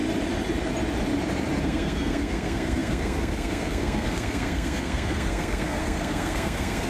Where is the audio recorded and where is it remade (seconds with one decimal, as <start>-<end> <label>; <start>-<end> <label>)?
0.0-1.6 recorded; 1.6-6.9 remade